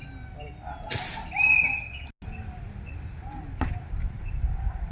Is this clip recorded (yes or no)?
yes